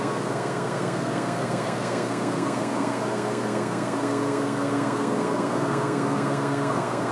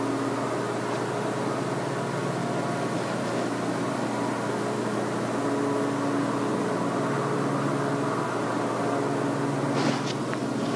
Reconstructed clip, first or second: first